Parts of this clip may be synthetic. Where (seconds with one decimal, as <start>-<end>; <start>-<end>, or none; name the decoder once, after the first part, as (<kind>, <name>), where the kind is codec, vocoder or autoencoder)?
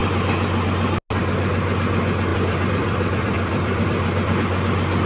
2.3-4.4 (vocoder, BigVGAN v2)